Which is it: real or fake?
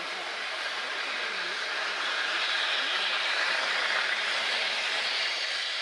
fake